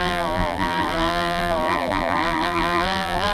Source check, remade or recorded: remade